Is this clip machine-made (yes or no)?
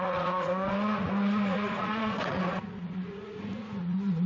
yes